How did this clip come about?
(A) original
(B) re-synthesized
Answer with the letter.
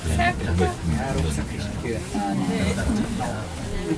A